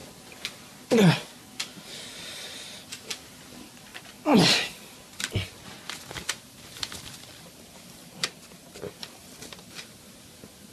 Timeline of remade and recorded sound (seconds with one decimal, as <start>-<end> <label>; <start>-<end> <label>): 0.0-1.6 recorded; 1.6-3.9 remade; 3.9-6.5 recorded; 6.5-10.7 remade